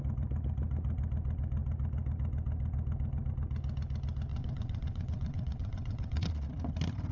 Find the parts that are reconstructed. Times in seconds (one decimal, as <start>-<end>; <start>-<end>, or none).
4.3-6.3